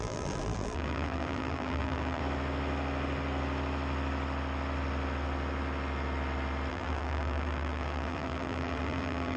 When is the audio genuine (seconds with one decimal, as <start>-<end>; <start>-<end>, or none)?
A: 2.2-6.7